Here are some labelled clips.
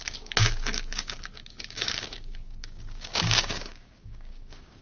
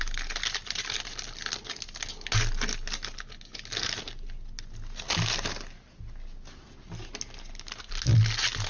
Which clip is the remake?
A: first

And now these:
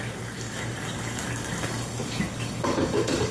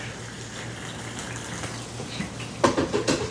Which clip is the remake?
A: first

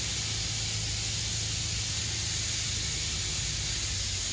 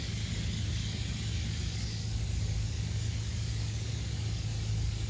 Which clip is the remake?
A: second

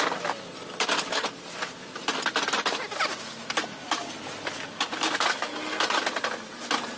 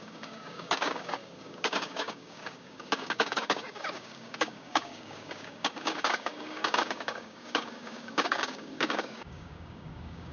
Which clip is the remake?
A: second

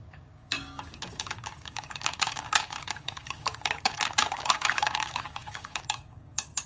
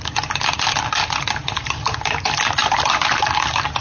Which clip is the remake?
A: first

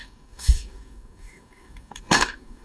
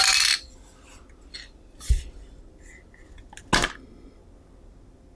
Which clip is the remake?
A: first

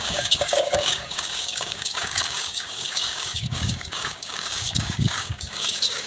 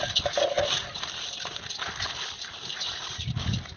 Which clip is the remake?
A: first